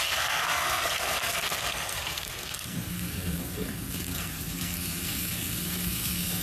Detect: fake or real fake